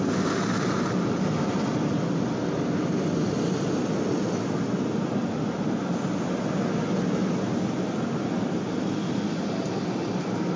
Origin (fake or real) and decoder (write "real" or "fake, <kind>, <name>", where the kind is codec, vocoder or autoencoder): real